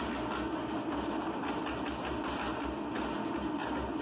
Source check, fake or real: real